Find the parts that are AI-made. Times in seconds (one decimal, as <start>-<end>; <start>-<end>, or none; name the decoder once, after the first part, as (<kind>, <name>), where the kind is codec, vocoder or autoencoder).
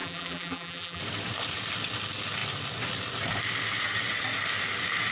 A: 0.0-1.0 (vocoder, BigVGAN v2)